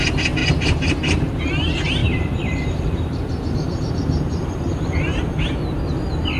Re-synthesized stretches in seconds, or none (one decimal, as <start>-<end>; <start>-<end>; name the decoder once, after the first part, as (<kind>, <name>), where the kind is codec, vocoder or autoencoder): 0.4-1.3 (vocoder, BigVGAN v2); 2.0-5.8

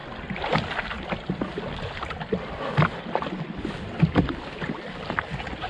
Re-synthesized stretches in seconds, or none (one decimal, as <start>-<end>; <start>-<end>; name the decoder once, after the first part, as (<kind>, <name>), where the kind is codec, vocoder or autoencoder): none

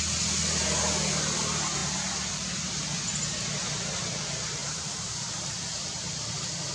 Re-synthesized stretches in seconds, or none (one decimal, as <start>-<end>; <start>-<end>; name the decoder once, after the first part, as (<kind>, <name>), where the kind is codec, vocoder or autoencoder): 4.6-5.3 (vocoder, BigVGAN v2); 5.7-6.7